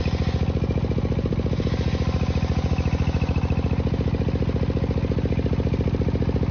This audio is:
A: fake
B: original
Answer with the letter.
B